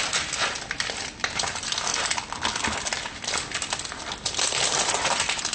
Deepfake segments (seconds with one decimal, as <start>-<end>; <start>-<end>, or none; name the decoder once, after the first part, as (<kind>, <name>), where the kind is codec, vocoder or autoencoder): none